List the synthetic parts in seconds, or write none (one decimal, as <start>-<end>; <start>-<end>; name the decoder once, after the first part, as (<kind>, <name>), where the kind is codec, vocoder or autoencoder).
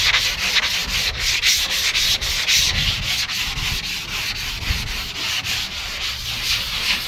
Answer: none